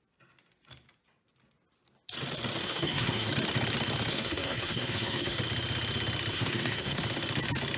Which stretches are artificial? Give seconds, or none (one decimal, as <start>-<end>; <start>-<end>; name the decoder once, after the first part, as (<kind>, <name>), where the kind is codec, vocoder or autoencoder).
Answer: 2.6-3.3 (codec, SNAC); 4.1-5.4; 6.3-7.0